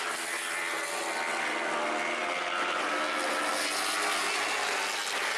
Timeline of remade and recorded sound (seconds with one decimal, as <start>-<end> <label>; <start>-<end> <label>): 0.0-5.4 recorded